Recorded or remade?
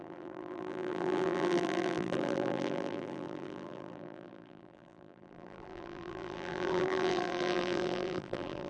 remade